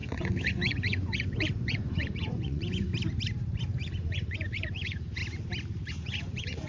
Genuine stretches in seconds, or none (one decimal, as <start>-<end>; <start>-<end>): 2.9-3.6; 5.2-5.9